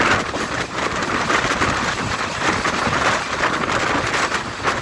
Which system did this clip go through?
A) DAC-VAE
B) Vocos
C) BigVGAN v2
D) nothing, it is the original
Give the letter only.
D